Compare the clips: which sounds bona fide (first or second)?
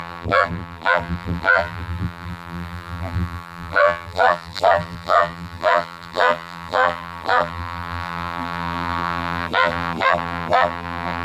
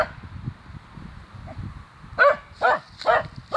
second